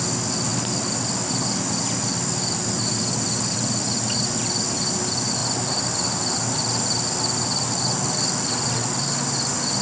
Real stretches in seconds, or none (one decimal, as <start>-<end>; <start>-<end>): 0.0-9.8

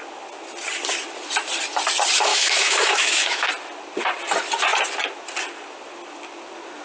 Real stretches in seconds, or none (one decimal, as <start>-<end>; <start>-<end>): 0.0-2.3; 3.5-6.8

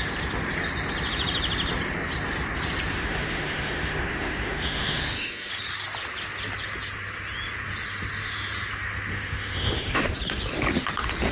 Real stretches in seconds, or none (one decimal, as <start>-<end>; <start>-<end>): 0.0-2.9; 5.5-9.1; 10.1-11.3